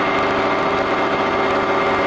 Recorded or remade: recorded